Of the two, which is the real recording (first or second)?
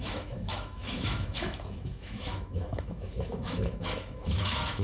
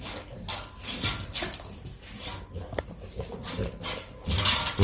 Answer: second